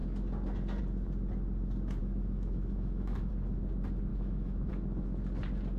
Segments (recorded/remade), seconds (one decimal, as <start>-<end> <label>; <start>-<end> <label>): 0.0-2.0 recorded; 2.0-3.3 remade; 3.3-4.1 recorded; 4.1-4.7 remade; 4.7-5.8 recorded